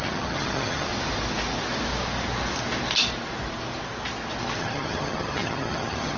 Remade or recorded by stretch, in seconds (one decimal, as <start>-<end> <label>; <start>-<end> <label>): 0.0-0.9 remade; 0.9-4.6 recorded; 4.6-6.2 remade